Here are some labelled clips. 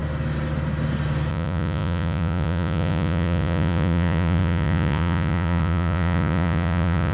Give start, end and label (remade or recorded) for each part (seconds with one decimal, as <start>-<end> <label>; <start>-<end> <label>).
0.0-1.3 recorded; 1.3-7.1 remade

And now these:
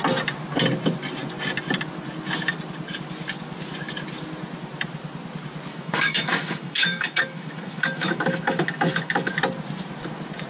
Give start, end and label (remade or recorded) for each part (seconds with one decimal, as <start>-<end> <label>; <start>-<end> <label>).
0.0-5.7 recorded; 5.7-9.3 remade; 9.3-10.5 recorded

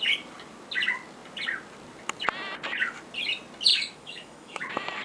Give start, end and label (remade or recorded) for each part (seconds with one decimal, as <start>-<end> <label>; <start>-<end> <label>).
0.0-3.7 recorded; 3.7-4.6 remade; 4.6-5.0 recorded

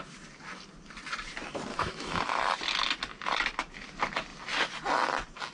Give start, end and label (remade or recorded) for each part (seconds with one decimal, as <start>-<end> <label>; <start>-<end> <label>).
0.0-1.7 recorded; 1.7-2.2 remade; 2.2-5.5 recorded